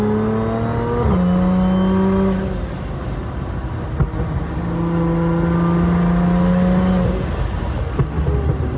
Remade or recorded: recorded